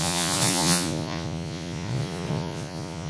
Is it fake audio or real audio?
fake